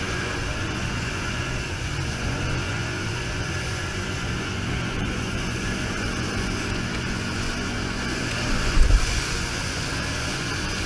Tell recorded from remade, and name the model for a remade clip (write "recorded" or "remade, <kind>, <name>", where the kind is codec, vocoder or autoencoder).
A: remade, vocoder, Vocos